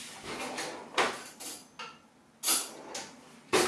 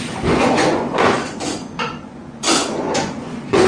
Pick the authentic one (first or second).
first